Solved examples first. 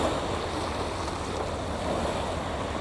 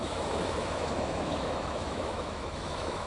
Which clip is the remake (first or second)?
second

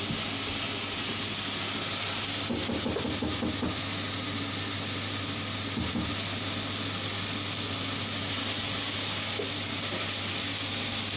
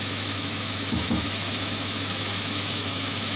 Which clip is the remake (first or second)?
second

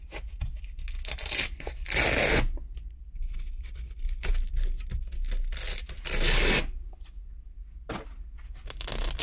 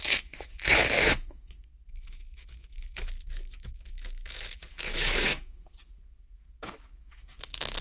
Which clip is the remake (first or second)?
second